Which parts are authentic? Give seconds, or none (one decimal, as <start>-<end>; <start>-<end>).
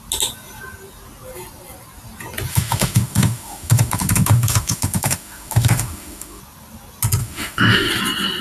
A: 0.0-2.5; 6.4-7.2; 7.9-8.4